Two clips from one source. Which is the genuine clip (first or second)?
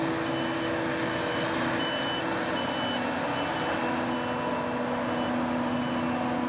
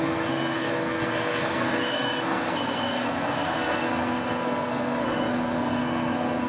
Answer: first